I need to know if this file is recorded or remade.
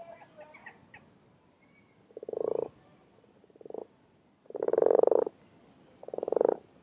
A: recorded